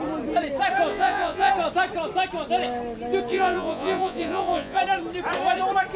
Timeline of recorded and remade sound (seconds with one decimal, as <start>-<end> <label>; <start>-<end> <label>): 0.0-0.9 recorded; 0.9-1.5 remade; 1.5-3.3 recorded; 3.3-4.8 remade; 4.8-6.0 recorded